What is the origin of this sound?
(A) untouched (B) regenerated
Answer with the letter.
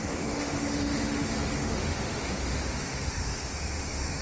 B